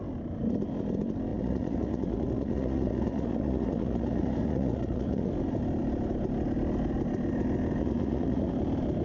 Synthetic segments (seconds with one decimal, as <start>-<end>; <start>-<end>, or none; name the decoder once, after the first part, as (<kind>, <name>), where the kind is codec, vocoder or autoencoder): 1.3-5.3 (vocoder, Vocos); 7.8-8.5